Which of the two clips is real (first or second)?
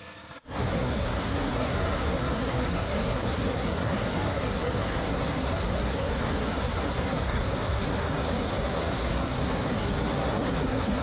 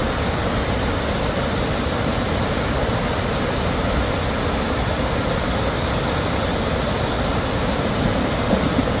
second